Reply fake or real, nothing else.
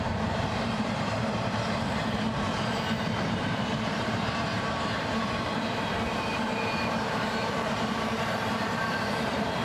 fake